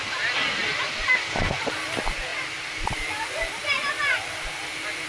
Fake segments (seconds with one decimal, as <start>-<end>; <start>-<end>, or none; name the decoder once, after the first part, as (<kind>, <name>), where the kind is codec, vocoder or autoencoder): none